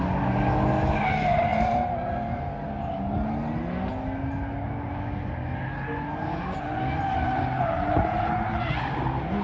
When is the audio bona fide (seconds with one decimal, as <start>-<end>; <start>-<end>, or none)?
0.0-9.4

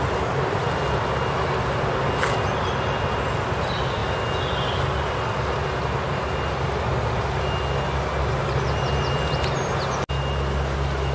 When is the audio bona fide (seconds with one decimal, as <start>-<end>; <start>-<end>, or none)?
0.0-11.1

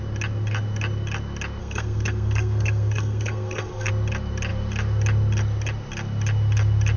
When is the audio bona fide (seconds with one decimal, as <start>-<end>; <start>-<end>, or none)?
0.0-1.6; 3.9-7.0

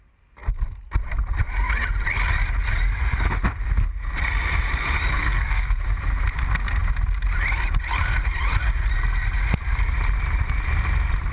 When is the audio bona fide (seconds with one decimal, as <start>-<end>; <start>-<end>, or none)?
0.0-5.1; 5.8-11.3